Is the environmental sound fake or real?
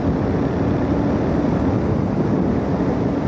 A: real